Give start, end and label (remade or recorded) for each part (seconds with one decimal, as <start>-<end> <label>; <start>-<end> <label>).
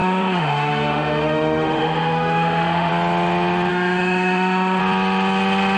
0.0-2.9 remade; 2.9-3.7 recorded; 3.7-4.8 remade; 4.8-5.8 recorded